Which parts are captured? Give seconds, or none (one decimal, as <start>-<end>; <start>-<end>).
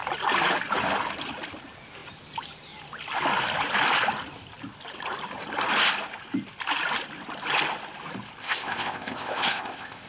0.0-8.4